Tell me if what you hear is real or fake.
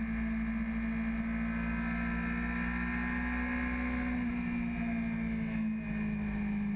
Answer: real